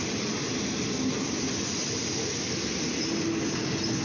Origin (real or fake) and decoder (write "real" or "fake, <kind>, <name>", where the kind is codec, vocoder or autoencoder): real